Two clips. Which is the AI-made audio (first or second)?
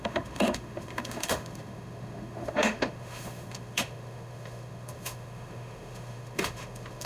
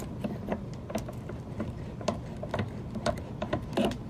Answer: first